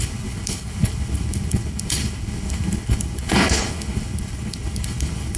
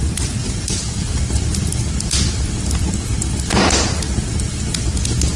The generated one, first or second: first